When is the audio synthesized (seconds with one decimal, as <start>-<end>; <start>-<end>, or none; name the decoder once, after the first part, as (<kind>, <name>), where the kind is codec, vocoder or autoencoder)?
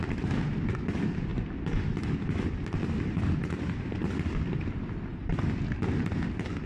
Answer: 0.0-2.8 (vocoder, BigVGAN v2); 3.3-6.7